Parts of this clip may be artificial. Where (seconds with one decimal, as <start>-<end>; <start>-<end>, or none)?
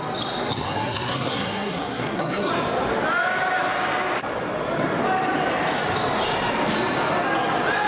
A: 0.5-2.5